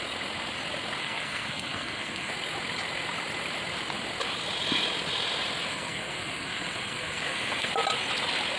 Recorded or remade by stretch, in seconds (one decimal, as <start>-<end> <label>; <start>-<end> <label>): 0.0-1.0 recorded; 1.0-2.3 remade; 2.3-5.7 recorded; 5.7-7.7 remade; 7.7-8.6 recorded